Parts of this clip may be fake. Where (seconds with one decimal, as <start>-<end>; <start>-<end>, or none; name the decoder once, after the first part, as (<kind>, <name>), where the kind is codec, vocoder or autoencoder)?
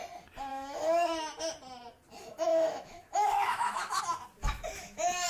0.5-1.4 (autoencoder, DAC-VAE); 2.5-4.0; 4.4-5.3